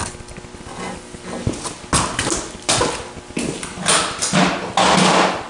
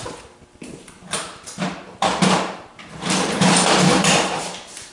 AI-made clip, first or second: second